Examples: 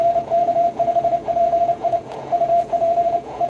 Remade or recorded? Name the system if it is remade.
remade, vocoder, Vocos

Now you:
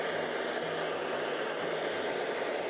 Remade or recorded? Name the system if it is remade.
recorded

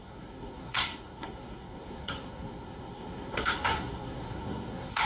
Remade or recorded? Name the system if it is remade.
remade, codec, SNAC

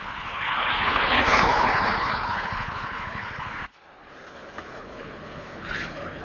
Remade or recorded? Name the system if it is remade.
remade, codec, HILCodec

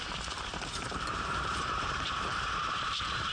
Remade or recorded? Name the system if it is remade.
remade, vocoder, BigVGAN v2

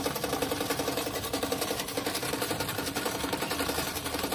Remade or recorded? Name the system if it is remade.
remade, vocoder, BigVGAN v2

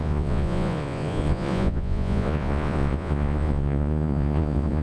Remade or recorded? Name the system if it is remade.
remade, vocoder, Vocos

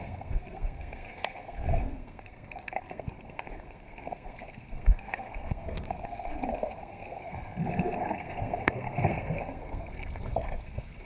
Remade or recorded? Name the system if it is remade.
remade, codec, SNAC